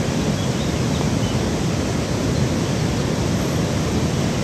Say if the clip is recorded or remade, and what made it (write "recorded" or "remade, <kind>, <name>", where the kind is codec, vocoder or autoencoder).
recorded